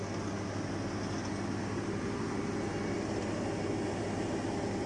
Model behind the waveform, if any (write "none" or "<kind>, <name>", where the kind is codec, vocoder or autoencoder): none